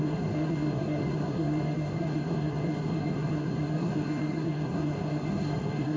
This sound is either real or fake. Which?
fake